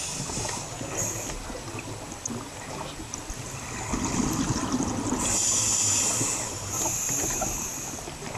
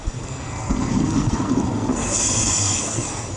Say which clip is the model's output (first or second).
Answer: second